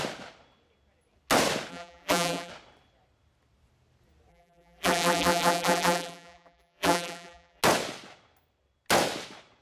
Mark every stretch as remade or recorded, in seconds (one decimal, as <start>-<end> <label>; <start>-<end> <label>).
0.0-1.7 recorded; 1.7-2.5 remade; 2.5-4.3 recorded; 4.3-7.6 remade; 7.6-9.6 recorded